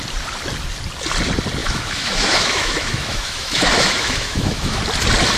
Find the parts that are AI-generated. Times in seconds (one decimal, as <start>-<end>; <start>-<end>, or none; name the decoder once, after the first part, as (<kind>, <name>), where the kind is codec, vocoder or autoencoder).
1.6-4.8 (autoencoder, DAC-VAE)